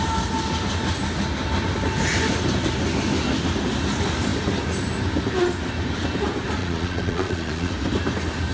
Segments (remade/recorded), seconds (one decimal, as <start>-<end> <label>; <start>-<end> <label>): 0.0-6.6 recorded; 6.6-7.7 remade; 7.7-8.5 recorded